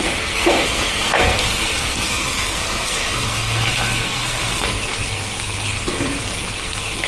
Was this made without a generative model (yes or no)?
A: no